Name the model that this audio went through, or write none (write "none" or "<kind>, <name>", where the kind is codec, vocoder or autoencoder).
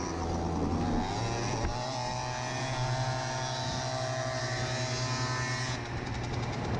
none